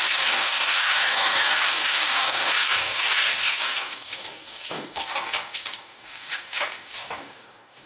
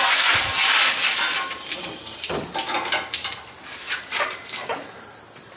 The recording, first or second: second